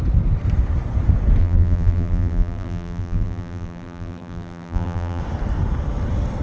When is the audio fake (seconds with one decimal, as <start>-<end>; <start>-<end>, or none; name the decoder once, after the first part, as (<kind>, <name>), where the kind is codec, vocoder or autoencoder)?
1.4-5.2 (vocoder, BigVGAN v2)